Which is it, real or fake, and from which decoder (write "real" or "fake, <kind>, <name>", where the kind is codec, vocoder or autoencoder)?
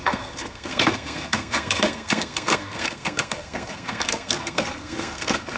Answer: fake, codec, SNAC